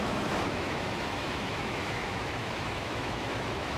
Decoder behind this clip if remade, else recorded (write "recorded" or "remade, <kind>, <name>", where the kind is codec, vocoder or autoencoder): remade, autoencoder, DAC-VAE